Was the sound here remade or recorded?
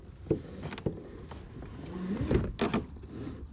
recorded